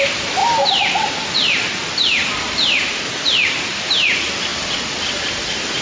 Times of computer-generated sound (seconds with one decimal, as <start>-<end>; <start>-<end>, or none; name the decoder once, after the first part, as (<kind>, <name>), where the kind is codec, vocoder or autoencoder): 0.4-3.9 (vocoder, BigVGAN v2)